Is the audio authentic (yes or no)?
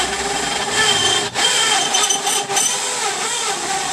yes